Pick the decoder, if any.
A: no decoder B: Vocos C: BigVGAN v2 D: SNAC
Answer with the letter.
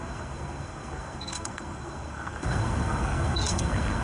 D